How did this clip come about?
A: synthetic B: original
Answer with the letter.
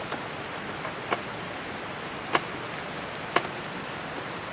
B